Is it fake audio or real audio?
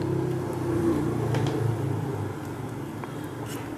real